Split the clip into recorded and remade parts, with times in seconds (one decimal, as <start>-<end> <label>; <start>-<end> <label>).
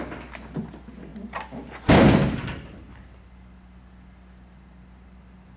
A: 0.0-5.6 recorded